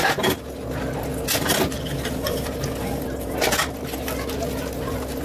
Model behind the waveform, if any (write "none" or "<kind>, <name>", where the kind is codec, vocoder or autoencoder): none